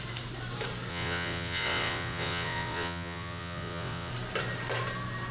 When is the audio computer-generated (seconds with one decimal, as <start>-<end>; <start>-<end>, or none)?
0.9-4.1